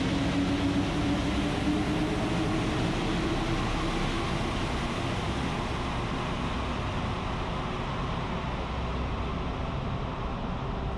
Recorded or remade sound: recorded